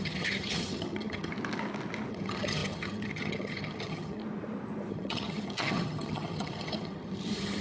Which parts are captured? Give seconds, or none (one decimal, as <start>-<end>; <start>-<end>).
1.3-2.1; 4.2-4.9